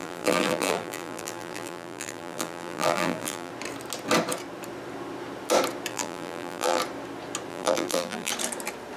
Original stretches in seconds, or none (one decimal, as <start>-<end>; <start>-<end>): 3.5-5.9; 6.8-7.5; 8.3-9.0